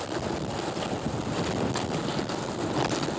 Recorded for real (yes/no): yes